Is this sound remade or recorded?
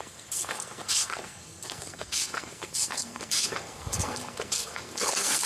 remade